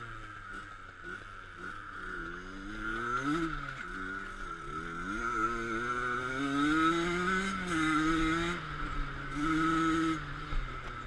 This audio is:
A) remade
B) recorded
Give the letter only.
B